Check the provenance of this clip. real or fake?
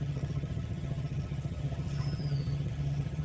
fake